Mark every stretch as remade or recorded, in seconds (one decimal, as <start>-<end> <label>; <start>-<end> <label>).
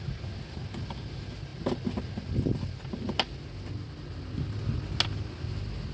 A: 0.0-5.9 recorded